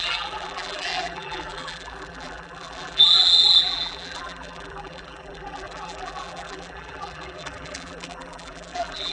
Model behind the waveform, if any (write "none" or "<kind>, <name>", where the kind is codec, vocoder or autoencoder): vocoder, BigVGAN v2